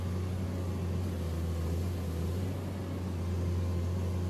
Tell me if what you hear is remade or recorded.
recorded